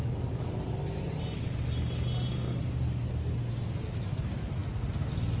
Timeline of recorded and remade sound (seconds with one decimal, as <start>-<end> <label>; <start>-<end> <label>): 0.0-5.4 recorded